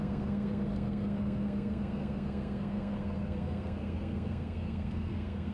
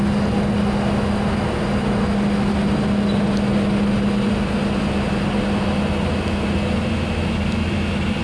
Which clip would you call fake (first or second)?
first